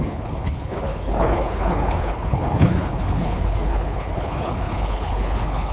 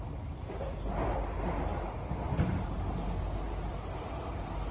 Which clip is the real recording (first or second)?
second